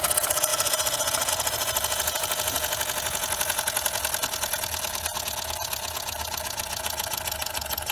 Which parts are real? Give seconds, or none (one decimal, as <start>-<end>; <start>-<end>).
none